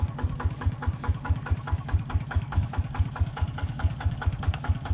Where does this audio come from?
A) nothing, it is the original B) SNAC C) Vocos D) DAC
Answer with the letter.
D